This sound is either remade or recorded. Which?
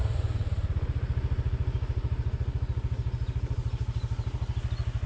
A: recorded